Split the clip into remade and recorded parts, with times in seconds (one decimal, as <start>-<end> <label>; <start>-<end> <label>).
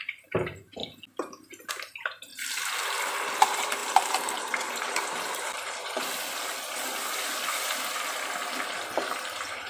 0.0-0.8 remade; 0.8-1.7 recorded; 1.7-2.3 remade; 2.3-3.4 recorded; 3.4-5.8 remade; 5.8-9.1 recorded; 9.1-9.7 remade